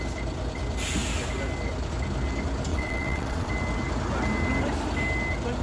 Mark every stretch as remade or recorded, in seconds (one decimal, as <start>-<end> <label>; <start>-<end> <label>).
0.0-2.7 recorded; 2.7-3.5 remade; 3.5-5.6 recorded